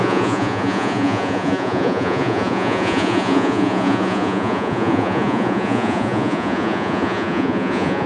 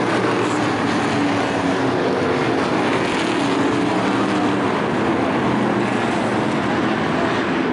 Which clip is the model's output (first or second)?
first